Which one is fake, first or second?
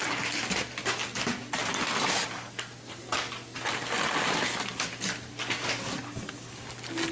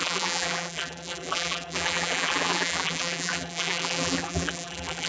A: second